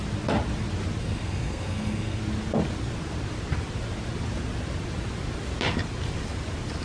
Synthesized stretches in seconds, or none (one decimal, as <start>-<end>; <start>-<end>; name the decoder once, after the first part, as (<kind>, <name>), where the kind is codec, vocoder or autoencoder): 1.0-2.2 (codec, SNAC)